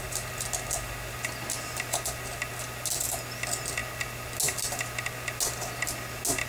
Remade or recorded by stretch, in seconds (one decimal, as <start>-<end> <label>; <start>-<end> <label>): 0.0-6.5 recorded